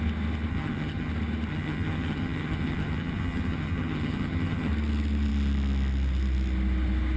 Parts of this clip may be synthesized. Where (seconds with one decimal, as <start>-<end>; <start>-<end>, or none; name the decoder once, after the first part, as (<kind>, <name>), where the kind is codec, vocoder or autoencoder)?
0.5-1.1 (vocoder, HiFi-GAN); 1.5-4.7